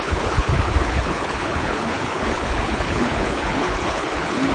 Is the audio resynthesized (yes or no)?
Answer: yes